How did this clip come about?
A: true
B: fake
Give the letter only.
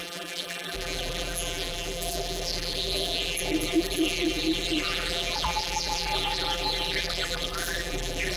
B